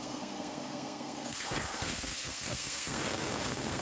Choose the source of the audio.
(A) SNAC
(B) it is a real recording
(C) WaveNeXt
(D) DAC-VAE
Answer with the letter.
A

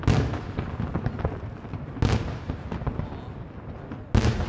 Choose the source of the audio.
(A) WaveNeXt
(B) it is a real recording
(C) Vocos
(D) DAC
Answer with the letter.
B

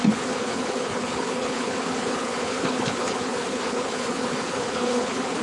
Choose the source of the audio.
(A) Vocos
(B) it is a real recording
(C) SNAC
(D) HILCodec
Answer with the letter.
D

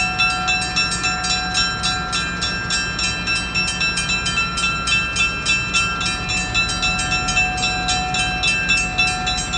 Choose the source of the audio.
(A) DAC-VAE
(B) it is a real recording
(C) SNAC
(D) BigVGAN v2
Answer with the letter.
B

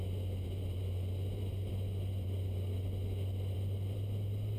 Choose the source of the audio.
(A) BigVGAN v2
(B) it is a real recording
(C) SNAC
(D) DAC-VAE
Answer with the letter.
B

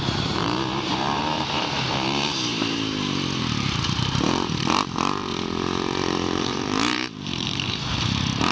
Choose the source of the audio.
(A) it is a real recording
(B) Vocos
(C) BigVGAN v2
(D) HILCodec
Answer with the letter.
C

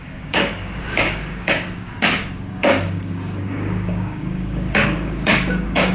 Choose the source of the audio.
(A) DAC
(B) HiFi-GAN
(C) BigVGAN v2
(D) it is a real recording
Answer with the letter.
A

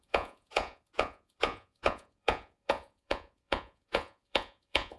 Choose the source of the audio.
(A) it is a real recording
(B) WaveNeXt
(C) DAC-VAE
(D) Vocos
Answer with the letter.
D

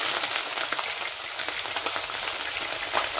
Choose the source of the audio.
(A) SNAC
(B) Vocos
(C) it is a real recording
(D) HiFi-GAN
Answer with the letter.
C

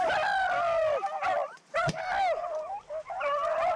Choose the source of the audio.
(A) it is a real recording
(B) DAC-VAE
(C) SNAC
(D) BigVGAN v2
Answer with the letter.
A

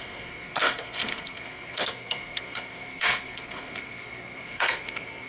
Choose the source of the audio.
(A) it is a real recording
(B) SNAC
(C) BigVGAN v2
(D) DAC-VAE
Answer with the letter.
B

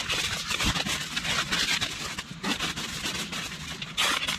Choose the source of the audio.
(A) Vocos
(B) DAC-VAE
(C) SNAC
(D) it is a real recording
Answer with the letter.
D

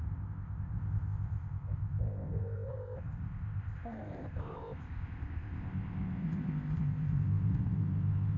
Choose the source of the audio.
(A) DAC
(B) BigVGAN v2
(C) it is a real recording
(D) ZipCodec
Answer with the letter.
D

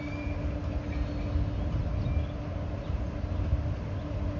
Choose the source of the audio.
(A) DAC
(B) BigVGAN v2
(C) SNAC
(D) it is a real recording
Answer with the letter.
D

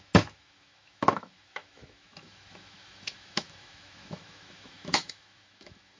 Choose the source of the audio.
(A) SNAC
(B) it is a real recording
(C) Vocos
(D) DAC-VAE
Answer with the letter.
D